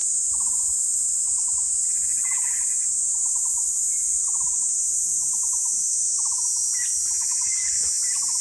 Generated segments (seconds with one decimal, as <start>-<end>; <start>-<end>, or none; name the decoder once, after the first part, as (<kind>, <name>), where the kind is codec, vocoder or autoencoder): none